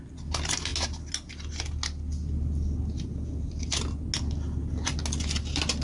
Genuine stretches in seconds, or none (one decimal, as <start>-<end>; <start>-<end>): 0.0-5.8